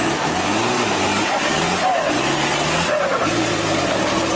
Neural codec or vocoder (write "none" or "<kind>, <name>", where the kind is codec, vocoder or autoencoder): none